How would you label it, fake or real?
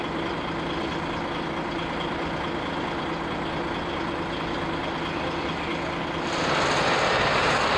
real